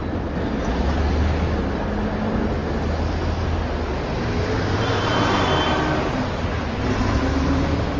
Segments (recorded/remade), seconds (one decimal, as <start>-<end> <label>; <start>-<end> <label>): 0.0-8.0 recorded